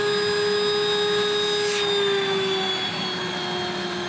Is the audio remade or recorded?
recorded